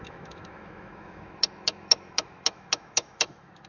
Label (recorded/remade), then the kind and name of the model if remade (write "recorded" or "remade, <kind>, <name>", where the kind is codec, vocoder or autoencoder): remade, autoencoder, DAC-VAE